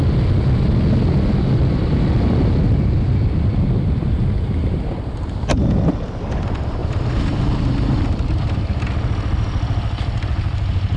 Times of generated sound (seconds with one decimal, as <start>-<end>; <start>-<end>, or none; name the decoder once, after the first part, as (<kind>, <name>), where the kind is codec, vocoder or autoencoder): 6.8-8.4 (vocoder, BigVGAN v2)